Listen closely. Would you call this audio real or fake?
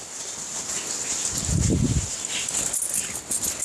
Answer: real